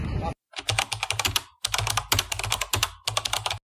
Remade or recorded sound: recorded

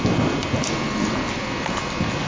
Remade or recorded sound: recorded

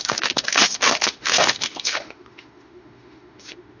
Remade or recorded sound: remade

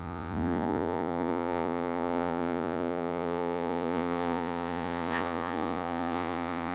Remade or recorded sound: remade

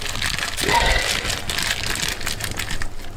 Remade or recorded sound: recorded